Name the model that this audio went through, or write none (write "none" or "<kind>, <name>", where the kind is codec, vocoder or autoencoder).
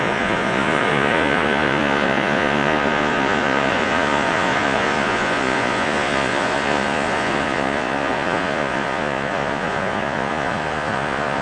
vocoder, Vocos